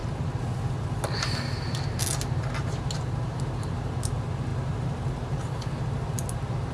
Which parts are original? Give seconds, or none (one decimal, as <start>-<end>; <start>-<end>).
0.0-6.7

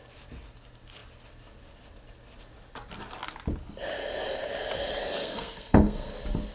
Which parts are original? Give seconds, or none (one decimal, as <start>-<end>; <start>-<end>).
0.0-5.2; 6.1-6.5

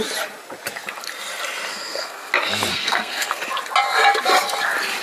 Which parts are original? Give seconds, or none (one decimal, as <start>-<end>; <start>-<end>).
0.0-1.7; 2.3-2.7; 3.4-5.0

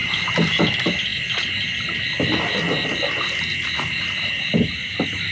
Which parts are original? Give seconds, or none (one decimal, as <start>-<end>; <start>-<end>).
0.0-5.3

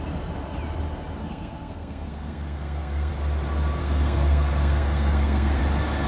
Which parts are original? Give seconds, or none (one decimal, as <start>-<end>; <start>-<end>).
0.0-1.2; 3.1-3.8; 5.6-6.1